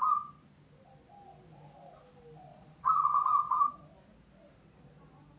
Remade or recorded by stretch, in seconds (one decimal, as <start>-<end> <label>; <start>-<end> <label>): 0.0-2.5 recorded; 2.5-3.7 remade; 3.7-5.4 recorded